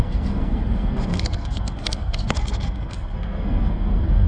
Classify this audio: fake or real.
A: fake